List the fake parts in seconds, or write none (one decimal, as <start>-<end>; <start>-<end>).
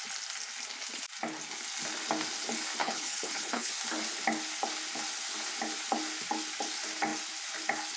2.8-3.7